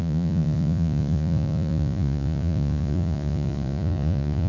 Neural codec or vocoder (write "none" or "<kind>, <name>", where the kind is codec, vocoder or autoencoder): vocoder, Vocos